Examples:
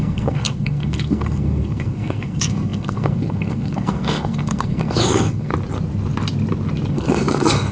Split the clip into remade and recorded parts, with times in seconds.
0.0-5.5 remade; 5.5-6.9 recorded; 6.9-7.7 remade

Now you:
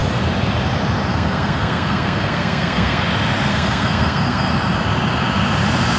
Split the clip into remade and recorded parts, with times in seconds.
0.0-1.1 recorded; 1.1-3.0 remade; 3.0-3.5 recorded; 3.5-4.5 remade; 4.5-6.0 recorded

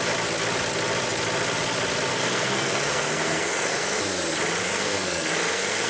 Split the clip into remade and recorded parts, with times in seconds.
0.0-2.1 recorded; 2.1-4.0 remade; 4.0-4.6 recorded; 4.6-5.9 remade

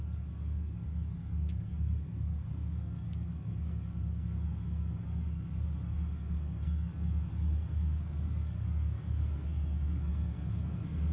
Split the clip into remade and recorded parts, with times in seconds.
0.0-11.1 remade

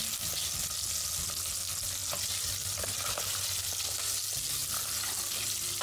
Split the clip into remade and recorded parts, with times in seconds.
0.0-5.8 recorded

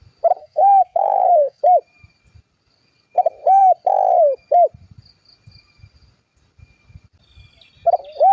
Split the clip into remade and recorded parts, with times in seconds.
0.0-0.4 recorded; 0.4-1.6 remade; 1.6-8.3 recorded